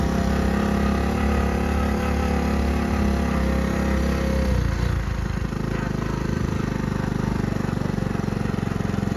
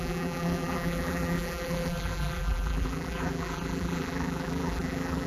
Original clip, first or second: first